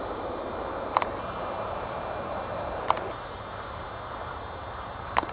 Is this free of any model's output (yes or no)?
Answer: no